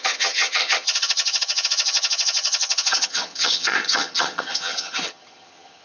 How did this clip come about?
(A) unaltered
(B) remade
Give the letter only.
B